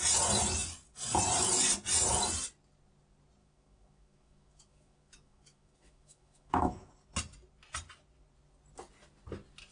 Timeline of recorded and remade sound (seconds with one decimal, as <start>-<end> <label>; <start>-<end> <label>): 0.0-3.4 recorded; 3.4-6.9 remade; 6.9-9.7 recorded